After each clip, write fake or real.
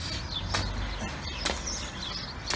real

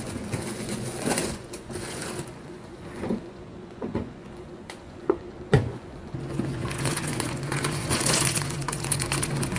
fake